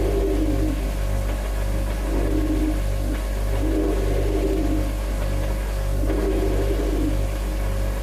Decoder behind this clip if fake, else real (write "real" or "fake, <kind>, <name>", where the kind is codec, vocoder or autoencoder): real